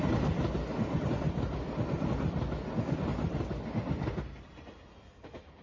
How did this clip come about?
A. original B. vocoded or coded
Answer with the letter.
A